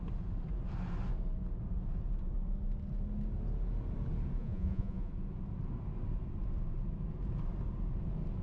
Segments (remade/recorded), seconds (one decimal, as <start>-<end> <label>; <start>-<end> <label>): 0.0-4.4 recorded; 4.4-5.1 remade; 5.1-8.4 recorded